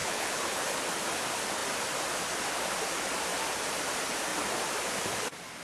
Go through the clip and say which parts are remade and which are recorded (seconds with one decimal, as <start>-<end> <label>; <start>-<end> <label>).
0.0-0.8 remade; 0.8-5.6 recorded